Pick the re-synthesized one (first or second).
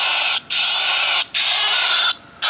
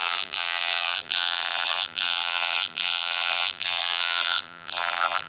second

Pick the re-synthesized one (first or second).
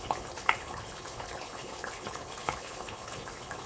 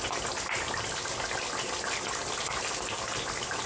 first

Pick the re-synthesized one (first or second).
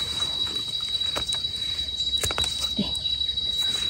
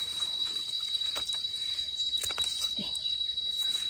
first